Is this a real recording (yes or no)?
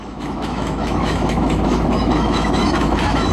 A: no